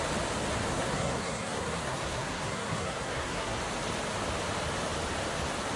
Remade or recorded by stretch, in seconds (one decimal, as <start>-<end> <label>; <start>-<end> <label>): 0.0-0.7 recorded; 0.7-3.6 remade; 3.6-5.8 recorded